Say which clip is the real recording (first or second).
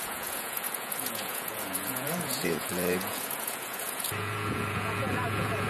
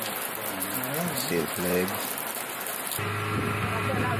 second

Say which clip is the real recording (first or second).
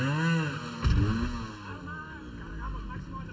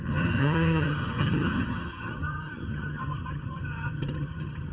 first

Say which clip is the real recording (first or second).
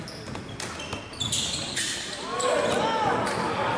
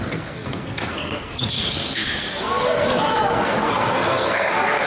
first